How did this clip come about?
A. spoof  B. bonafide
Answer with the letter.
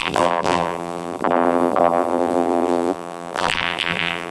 A